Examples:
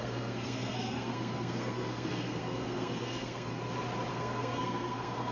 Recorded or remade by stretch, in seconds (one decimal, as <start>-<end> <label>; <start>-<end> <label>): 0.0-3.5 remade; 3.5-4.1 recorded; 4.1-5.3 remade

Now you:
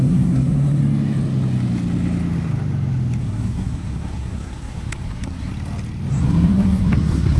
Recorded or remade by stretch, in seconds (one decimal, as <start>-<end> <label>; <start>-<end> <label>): 0.0-0.8 remade; 0.8-3.2 recorded; 3.2-5.5 remade; 5.5-6.1 recorded; 6.1-7.4 remade

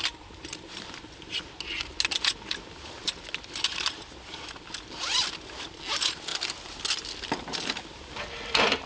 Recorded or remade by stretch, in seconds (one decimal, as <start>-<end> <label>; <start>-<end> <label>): 0.0-8.9 recorded

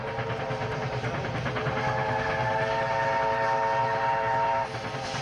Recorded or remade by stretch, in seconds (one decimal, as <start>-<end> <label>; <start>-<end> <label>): 0.0-5.2 recorded

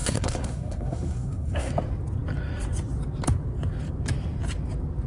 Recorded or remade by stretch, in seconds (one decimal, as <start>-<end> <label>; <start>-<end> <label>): 0.0-1.7 remade; 1.7-5.1 recorded

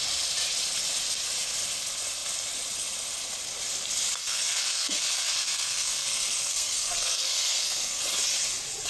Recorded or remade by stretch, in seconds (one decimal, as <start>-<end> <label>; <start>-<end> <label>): 0.0-4.2 recorded; 4.2-8.0 remade; 8.0-8.9 recorded

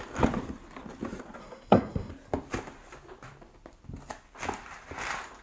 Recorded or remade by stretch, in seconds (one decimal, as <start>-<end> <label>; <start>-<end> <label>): 0.0-1.4 recorded; 1.4-2.1 remade; 2.1-5.4 recorded

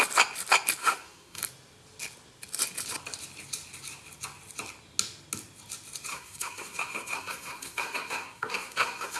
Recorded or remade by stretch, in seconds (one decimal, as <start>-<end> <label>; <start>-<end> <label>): 0.0-0.8 recorded; 0.8-1.4 remade; 1.4-6.1 recorded; 6.1-9.2 remade